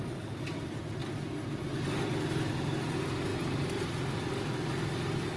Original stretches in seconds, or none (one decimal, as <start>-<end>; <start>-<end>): 0.0-5.4